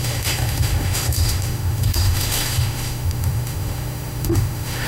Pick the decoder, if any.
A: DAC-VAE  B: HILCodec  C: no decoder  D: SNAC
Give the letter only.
A